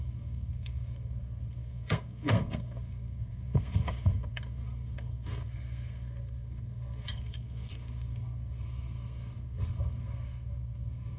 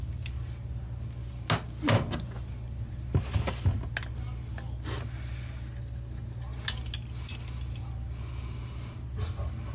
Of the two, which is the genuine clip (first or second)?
second